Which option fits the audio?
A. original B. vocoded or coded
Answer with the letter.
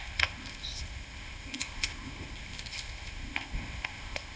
B